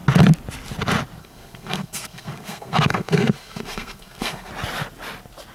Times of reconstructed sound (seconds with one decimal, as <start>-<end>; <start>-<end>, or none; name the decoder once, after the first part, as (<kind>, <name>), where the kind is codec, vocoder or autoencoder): 1.2-4.5 (codec, SNAC)